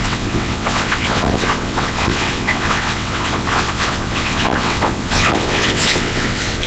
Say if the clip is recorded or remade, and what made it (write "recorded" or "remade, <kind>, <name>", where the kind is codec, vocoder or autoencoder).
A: remade, vocoder, WaveNeXt